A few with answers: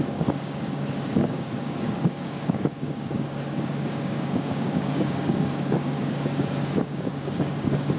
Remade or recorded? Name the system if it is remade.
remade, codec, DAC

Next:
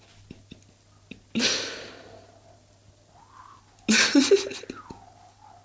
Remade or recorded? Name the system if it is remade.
recorded